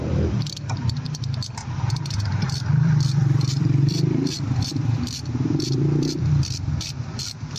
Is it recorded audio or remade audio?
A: remade